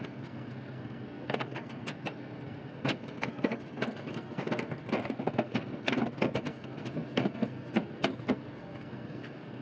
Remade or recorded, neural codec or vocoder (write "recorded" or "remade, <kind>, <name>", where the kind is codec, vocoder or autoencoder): remade, codec, SNAC